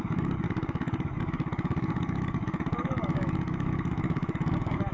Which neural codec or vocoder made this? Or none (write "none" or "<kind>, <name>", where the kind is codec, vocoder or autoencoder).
codec, DAC